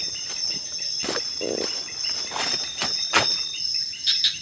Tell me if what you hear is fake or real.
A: real